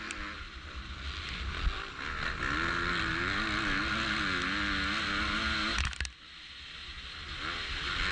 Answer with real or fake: real